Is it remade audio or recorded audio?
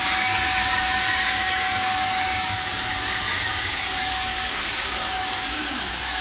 remade